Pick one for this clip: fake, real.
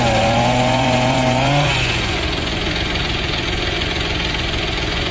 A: fake